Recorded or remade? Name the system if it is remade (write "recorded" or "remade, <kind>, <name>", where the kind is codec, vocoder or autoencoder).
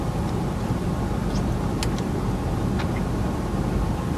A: recorded